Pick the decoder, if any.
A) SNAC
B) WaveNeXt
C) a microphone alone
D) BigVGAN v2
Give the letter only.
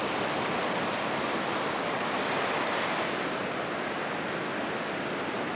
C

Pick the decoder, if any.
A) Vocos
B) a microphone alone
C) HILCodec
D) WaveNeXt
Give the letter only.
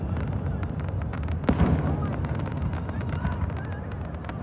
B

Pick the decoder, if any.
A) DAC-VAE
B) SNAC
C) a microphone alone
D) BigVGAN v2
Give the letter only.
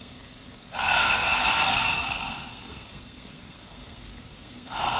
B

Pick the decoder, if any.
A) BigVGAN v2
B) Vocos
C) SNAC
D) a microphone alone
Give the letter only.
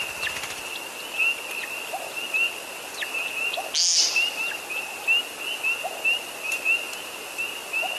D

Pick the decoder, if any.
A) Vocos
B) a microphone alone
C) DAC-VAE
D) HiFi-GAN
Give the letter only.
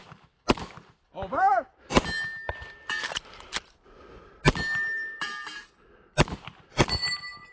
B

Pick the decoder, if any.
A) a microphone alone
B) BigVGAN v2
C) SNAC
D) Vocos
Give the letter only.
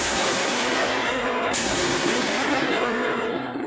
C